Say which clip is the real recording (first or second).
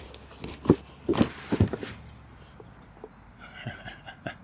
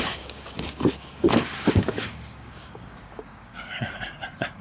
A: first